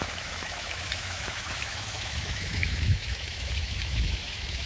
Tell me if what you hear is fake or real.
fake